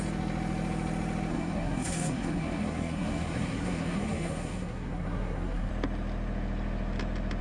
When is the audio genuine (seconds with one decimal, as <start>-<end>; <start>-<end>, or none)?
0.0-1.3; 5.7-7.4